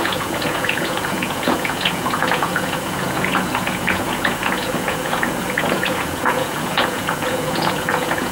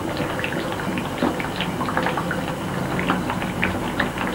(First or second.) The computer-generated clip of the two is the first